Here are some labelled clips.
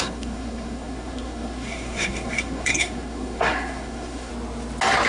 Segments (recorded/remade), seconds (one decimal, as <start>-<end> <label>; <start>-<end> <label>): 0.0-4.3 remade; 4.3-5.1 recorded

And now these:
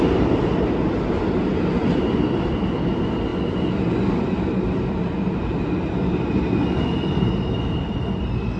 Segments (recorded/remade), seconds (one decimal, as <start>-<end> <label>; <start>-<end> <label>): 0.0-8.6 recorded

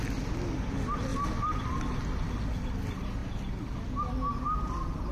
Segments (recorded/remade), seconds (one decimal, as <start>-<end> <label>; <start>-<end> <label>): 0.0-5.1 recorded